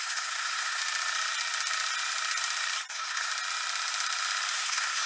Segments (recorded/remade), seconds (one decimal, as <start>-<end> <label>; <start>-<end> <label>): 0.0-0.8 remade; 0.8-2.9 recorded; 2.9-3.3 remade; 3.3-4.5 recorded; 4.5-5.1 remade

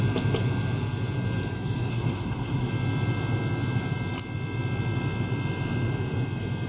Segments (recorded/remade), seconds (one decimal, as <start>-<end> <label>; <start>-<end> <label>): 0.0-1.9 recorded; 1.9-2.7 remade; 2.7-6.7 recorded

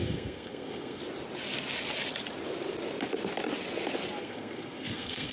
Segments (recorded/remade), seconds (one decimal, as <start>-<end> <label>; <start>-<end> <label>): 0.0-1.0 remade; 1.0-4.2 recorded; 4.2-5.3 remade

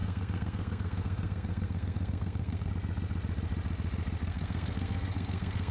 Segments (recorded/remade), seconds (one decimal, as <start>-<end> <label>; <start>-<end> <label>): 0.0-2.7 remade; 2.7-4.2 recorded; 4.2-5.7 remade

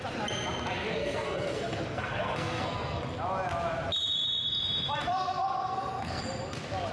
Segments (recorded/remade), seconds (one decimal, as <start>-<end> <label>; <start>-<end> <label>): 0.0-0.9 recorded; 0.9-3.0 remade; 3.0-5.0 recorded; 5.0-6.2 remade; 6.2-6.9 recorded

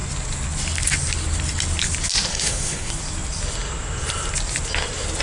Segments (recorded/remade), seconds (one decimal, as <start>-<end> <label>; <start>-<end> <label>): 0.0-2.3 recorded; 2.3-2.9 remade; 2.9-5.2 recorded

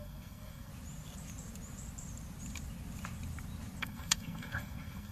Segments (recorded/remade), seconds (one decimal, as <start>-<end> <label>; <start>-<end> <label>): 0.0-0.7 remade; 0.7-3.8 recorded; 3.8-5.1 remade